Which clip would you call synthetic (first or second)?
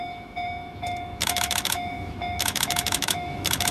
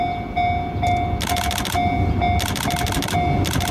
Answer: first